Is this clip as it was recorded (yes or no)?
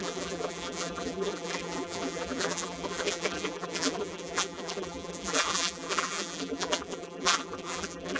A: no